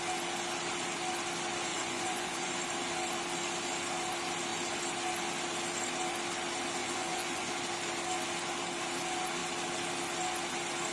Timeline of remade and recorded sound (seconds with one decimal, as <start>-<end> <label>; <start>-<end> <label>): 0.0-1.7 recorded; 1.7-2.6 remade; 2.6-6.8 recorded; 6.8-7.5 remade; 7.5-10.9 recorded